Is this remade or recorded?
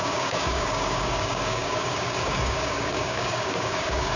remade